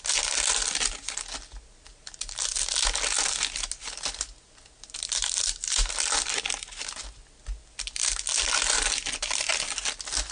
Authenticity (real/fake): real